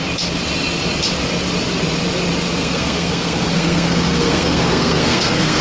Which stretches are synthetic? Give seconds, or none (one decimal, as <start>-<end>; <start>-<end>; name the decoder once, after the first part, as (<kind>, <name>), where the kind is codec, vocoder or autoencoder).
2.6-5.6 (codec, SNAC)